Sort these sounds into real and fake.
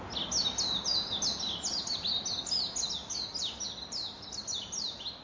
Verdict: real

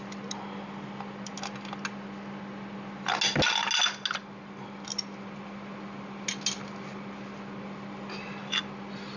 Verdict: real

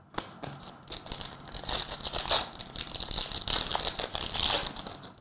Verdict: real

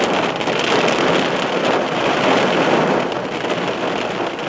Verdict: real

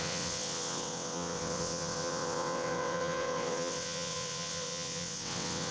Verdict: fake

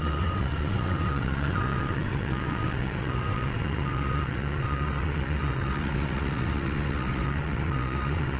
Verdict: fake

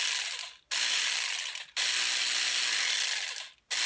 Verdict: real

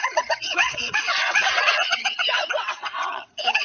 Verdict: fake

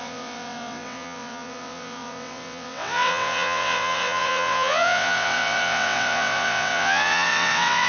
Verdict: fake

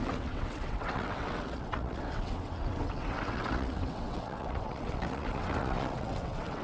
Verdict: fake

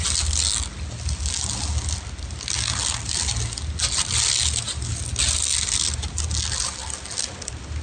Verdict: real